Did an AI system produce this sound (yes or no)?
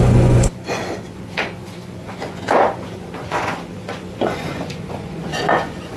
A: yes